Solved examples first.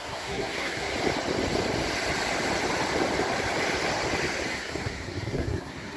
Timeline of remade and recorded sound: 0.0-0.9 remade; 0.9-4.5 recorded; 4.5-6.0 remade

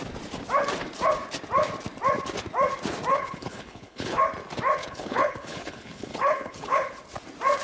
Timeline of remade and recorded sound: 0.0-3.1 recorded; 3.1-4.2 remade; 4.2-4.8 recorded; 4.8-7.0 remade; 7.0-7.6 recorded

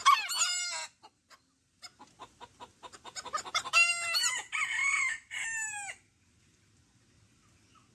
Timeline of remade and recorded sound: 0.0-2.2 recorded; 2.2-6.7 remade; 6.7-7.9 recorded

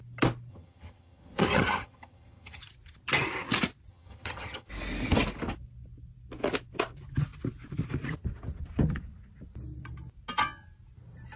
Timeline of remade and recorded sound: 0.0-0.5 recorded; 0.5-2.6 remade; 2.6-3.9 recorded; 3.9-4.7 remade; 4.7-11.4 recorded

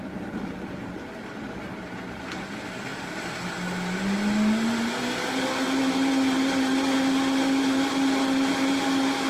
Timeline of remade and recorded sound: 0.0-9.3 recorded

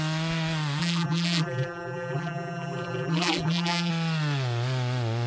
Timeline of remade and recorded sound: 0.0-0.8 recorded; 0.8-3.9 remade; 3.9-5.3 recorded